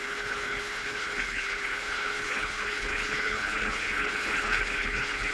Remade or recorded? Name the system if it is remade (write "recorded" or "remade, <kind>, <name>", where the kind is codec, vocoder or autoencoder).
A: remade, codec, HILCodec